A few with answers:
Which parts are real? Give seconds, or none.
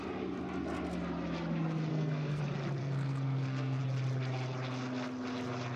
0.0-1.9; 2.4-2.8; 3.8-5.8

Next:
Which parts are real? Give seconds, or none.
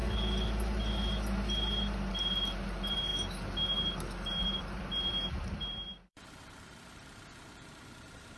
0.0-2.1; 3.1-4.3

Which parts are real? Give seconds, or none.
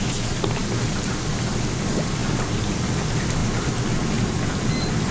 0.0-5.1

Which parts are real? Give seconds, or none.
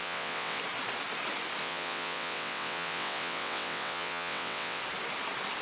0.6-1.6; 4.8-5.6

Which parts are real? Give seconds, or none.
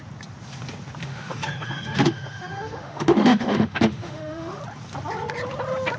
0.0-1.0; 4.6-6.0